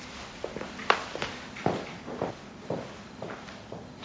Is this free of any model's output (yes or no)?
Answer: yes